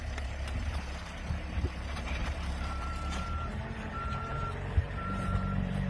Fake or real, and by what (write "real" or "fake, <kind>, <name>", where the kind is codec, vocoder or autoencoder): fake, vocoder, BigVGAN v2